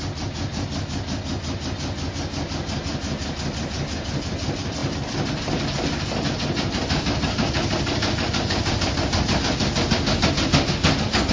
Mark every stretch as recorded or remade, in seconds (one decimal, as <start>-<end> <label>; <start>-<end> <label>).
0.0-11.3 recorded